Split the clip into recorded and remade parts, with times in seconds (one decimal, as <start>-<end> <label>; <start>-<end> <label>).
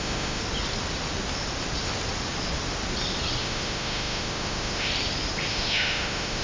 0.0-0.4 remade; 0.4-3.4 recorded; 3.4-4.9 remade; 4.9-5.5 recorded; 5.5-6.4 remade